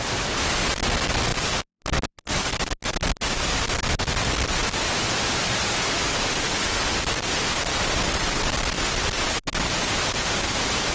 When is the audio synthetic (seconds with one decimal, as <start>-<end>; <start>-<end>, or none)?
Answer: none